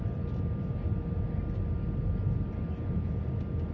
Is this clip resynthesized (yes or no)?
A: no